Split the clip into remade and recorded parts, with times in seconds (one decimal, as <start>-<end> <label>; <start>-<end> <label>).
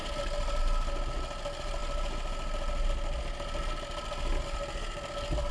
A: 0.0-5.5 recorded